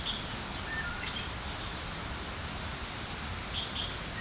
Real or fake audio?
real